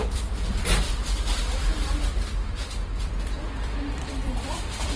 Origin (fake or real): fake